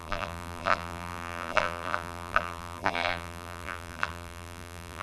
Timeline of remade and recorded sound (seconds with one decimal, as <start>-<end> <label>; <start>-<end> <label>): 0.0-5.0 remade